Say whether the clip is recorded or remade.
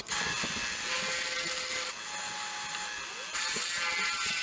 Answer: recorded